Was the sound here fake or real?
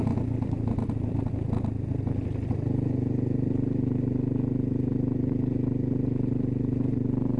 real